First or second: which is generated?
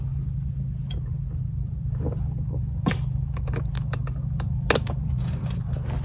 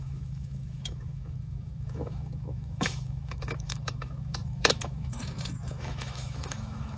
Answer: second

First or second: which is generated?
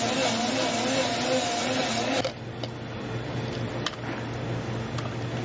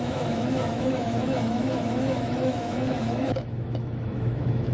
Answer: second